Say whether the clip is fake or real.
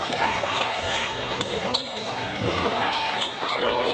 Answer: fake